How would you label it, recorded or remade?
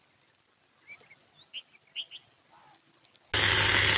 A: recorded